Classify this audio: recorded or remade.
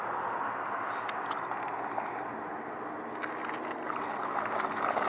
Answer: recorded